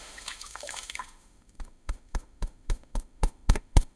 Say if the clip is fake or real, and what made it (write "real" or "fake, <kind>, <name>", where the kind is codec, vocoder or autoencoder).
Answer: fake, autoencoder, DAC-VAE